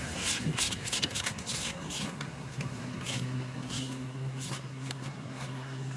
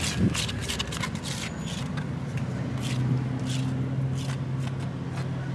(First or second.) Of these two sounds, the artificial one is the first